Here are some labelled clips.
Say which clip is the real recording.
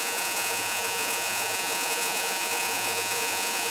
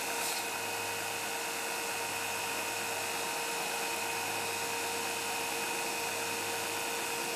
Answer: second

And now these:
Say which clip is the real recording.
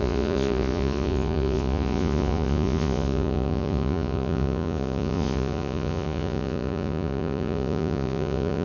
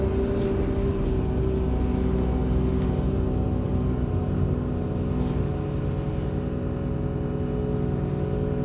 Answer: second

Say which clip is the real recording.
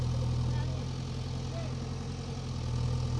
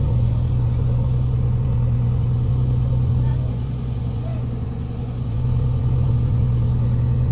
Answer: first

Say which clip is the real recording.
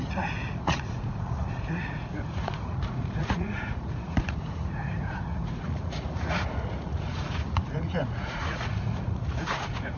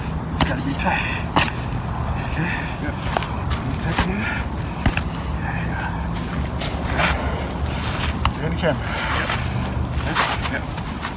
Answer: second